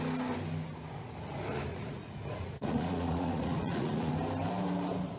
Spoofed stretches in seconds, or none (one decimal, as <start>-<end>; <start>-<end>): 1.7-4.1